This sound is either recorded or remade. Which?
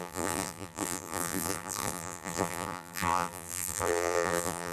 remade